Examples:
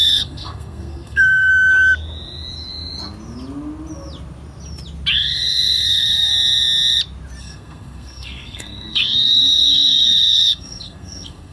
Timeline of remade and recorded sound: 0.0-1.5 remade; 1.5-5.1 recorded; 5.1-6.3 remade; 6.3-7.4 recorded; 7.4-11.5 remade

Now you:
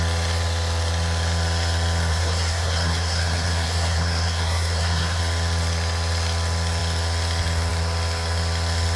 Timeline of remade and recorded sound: 0.0-2.1 recorded; 2.1-5.2 remade; 5.2-9.0 recorded